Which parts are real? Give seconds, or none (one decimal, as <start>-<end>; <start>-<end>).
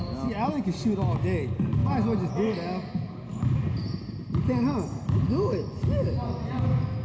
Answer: 0.0-7.0